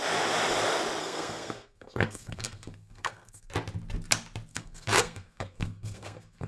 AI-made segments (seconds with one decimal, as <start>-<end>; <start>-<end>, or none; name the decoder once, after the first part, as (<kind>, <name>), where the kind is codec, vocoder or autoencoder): 1.0-3.5 (codec, SNAC); 4.5-6.5